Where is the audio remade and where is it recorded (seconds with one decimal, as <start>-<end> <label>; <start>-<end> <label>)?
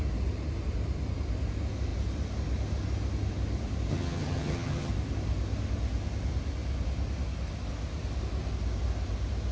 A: 0.0-3.9 recorded; 3.9-4.9 remade; 4.9-9.5 recorded